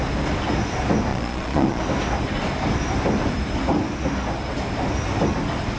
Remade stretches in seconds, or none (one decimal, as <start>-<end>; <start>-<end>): 1.1-1.8